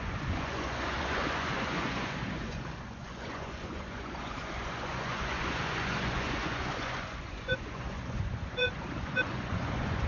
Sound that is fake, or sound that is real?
fake